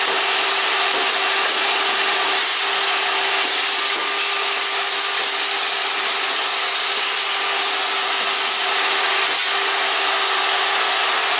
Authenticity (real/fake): real